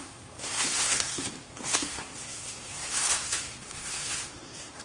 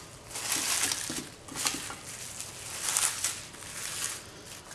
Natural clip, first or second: second